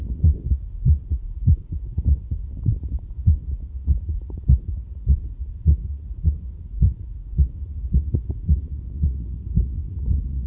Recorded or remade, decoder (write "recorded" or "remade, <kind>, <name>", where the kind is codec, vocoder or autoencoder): remade, vocoder, Vocos